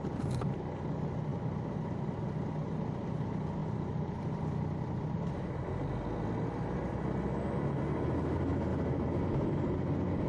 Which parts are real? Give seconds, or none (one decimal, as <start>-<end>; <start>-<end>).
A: 0.0-3.6; 4.2-10.3